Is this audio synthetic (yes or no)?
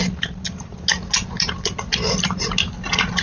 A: no